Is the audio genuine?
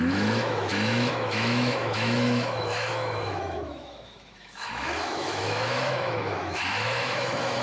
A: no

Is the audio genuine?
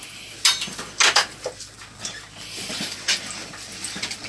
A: yes